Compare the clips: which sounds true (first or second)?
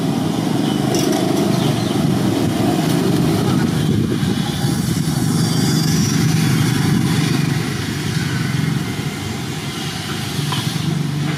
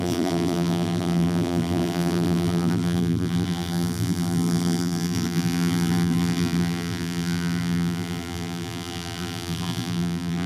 first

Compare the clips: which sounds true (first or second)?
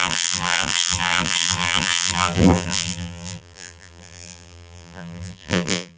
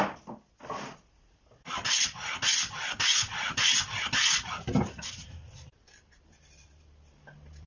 second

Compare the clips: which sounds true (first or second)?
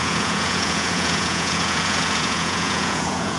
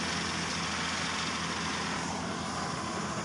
second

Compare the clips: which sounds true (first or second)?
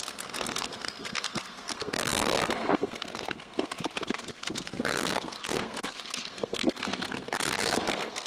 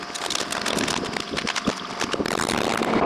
second